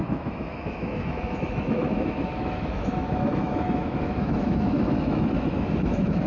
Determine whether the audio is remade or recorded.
remade